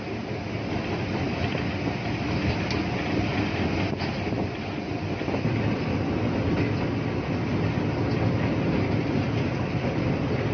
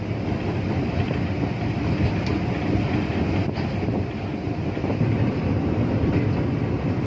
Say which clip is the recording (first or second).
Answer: first